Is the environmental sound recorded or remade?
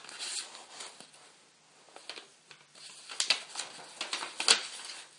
recorded